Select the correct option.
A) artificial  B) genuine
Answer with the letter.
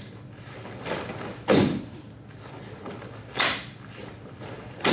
B